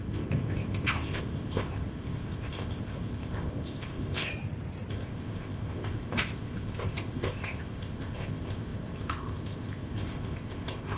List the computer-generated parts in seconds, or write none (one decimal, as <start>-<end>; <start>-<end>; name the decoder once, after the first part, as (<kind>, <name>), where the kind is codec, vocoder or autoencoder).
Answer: 0.0-4.3 (codec, ZipCodec); 4.9-11.0